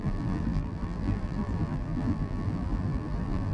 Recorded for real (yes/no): no